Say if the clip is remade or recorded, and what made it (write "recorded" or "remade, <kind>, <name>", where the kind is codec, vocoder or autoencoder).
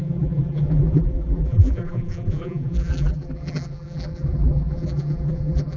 remade, vocoder, BigVGAN v2